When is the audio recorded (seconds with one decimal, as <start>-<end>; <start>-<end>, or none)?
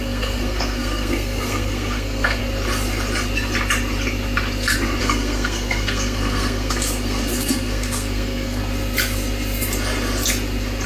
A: 2.4-5.0; 8.6-10.9